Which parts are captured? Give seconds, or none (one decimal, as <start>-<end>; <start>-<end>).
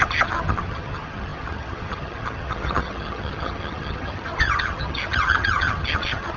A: none